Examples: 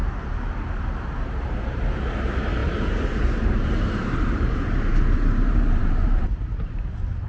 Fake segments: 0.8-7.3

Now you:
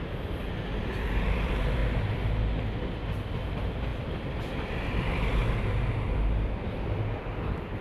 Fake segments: 0.0-1.8; 3.5-5.4; 6.7-7.8

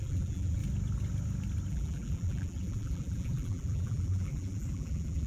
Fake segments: 0.0-0.6; 1.7-5.3

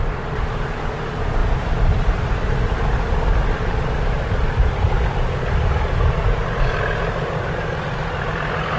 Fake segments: 1.4-6.0

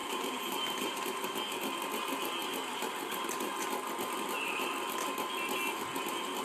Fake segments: 0.0-1.0

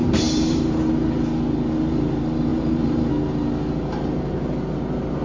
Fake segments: 0.0-0.9; 2.5-3.1